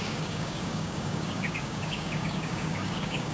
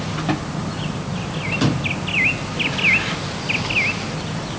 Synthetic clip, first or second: first